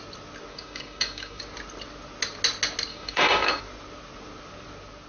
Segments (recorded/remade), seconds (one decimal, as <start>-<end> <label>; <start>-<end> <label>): 0.0-0.5 recorded; 0.5-1.4 remade; 1.4-2.9 recorded; 2.9-3.6 remade; 3.6-5.1 recorded